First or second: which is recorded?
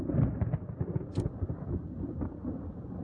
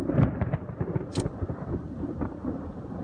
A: first